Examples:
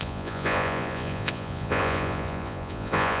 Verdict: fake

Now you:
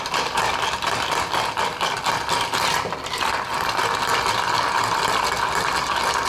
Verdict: real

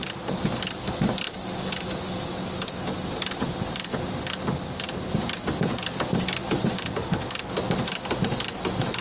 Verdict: real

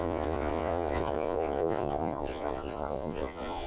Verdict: fake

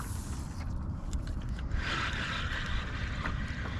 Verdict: real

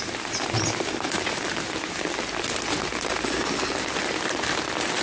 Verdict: real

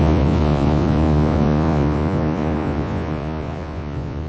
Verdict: fake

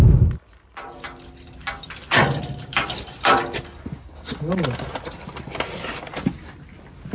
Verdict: real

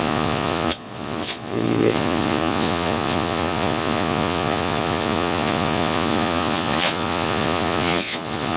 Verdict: fake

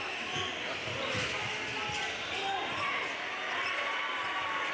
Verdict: real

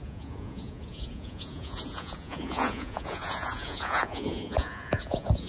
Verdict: fake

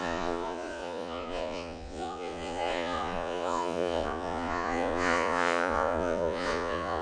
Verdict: fake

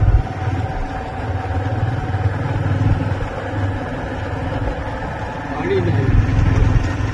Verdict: real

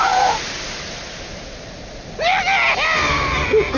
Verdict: real